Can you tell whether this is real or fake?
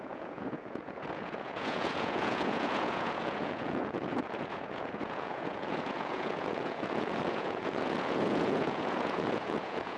fake